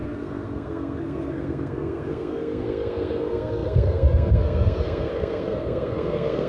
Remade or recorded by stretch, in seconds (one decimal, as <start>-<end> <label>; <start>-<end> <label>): 0.0-6.5 remade